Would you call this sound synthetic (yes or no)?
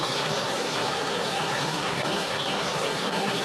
yes